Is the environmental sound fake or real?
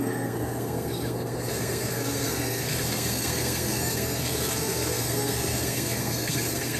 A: fake